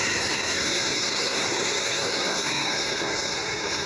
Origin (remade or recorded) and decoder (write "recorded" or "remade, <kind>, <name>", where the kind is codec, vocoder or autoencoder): remade, codec, SNAC